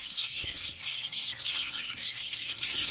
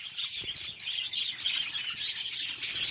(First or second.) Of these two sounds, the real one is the second